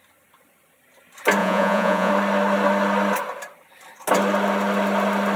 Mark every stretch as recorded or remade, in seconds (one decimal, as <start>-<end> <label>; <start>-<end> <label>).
0.0-1.4 recorded; 1.4-2.1 remade; 2.1-5.4 recorded